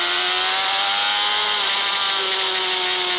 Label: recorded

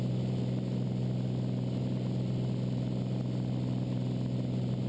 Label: recorded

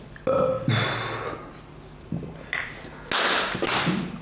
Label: recorded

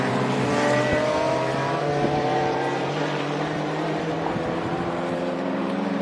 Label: remade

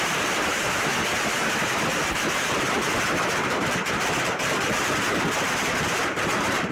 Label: remade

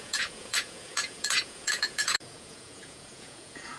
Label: remade